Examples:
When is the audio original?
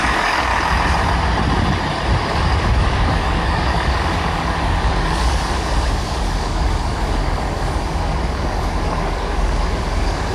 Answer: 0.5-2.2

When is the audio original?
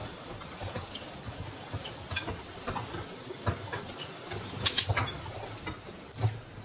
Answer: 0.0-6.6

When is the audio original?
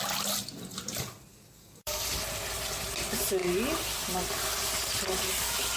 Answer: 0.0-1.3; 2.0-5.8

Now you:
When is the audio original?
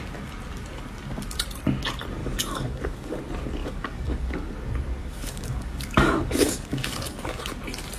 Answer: 0.0-2.2; 3.2-3.6; 4.5-5.0; 7.4-8.0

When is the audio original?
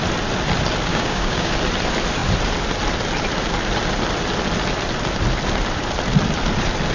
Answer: 0.0-0.9; 1.5-6.9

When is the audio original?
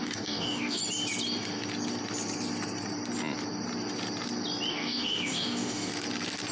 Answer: 0.8-4.7; 5.9-6.5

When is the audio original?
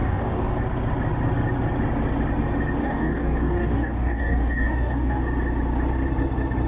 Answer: 0.5-2.8; 5.2-6.7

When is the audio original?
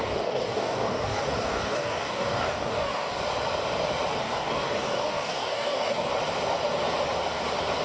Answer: 3.2-4.2; 6.1-7.8